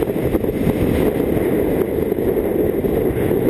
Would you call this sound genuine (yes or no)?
yes